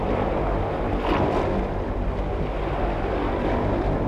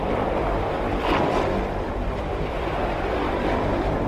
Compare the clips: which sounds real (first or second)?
first